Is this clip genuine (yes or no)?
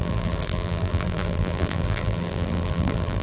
no